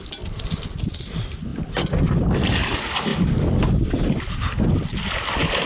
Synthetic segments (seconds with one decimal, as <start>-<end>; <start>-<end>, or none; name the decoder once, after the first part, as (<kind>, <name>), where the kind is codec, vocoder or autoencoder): none

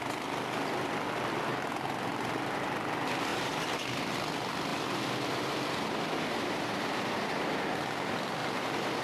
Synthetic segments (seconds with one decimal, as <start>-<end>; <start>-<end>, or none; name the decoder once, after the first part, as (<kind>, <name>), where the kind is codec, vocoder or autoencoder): 3.3-4.0 (vocoder, BigVGAN v2); 4.7-7.6; 8.4-9.0